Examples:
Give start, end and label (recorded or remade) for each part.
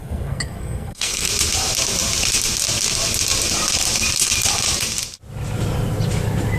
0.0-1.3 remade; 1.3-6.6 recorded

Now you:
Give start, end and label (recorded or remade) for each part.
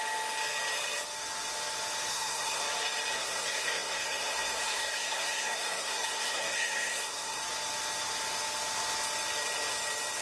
0.0-2.1 recorded; 2.1-2.6 remade; 2.6-3.1 recorded; 3.1-7.4 remade; 7.4-10.2 recorded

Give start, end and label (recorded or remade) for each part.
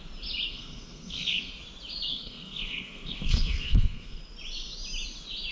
0.0-0.5 recorded; 0.5-1.5 remade; 1.5-2.1 recorded; 2.1-4.2 remade; 4.2-5.5 recorded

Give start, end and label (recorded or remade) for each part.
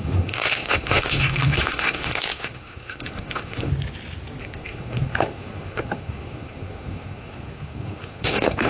0.0-3.7 remade; 3.7-4.4 recorded; 4.4-8.7 remade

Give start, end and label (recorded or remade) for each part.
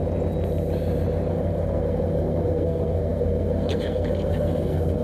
0.0-1.3 recorded; 1.3-5.0 remade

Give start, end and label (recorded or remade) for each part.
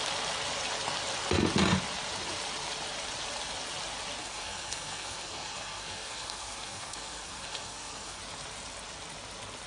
0.0-4.2 recorded; 4.2-8.2 remade; 8.2-9.7 recorded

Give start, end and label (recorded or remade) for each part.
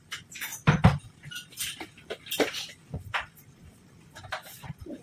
0.0-5.0 recorded